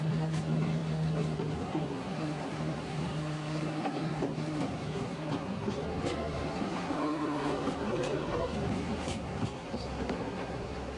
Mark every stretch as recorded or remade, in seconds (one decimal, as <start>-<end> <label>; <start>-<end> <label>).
0.0-11.0 remade